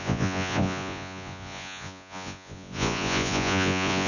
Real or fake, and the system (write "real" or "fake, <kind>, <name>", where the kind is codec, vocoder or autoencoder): fake, vocoder, Vocos